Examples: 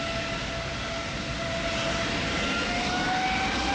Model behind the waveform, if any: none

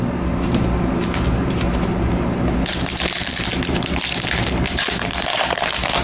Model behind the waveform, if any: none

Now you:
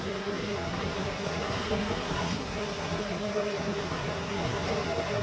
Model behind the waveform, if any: codec, SNAC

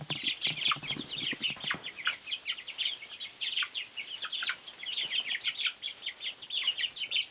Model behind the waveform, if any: none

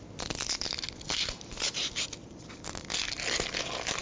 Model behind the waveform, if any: none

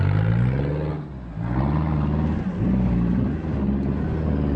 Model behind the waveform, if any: none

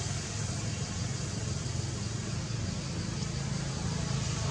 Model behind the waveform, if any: none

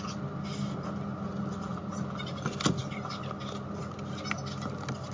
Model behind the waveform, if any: none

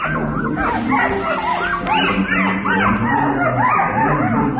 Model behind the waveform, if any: none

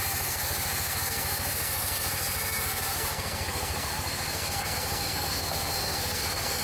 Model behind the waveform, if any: codec, SNAC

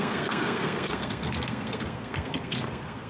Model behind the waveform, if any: codec, SNAC